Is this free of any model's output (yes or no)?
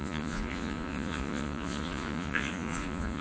no